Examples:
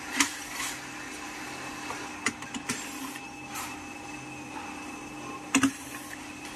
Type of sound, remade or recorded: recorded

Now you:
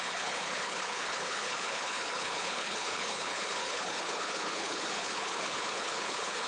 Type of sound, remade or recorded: remade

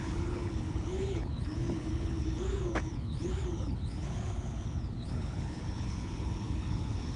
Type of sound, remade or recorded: remade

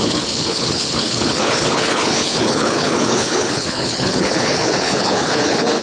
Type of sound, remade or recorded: remade